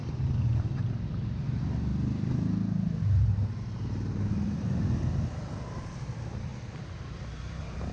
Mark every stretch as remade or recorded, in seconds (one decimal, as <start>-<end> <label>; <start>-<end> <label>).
0.0-1.9 remade; 1.9-4.3 recorded; 4.3-7.9 remade